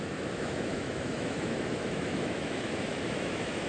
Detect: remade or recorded remade